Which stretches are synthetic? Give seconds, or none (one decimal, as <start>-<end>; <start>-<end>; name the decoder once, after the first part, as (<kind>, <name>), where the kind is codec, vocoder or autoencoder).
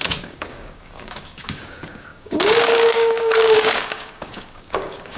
0.0-5.2 (codec, DAC)